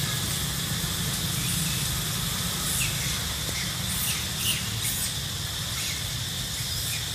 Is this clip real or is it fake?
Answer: real